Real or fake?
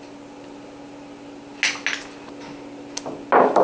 real